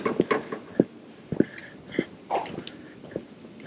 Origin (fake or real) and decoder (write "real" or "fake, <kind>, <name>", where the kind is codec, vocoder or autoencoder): real